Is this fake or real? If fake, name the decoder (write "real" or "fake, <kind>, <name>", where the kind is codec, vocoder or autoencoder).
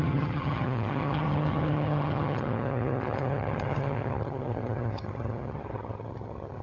fake, vocoder, HiFi-GAN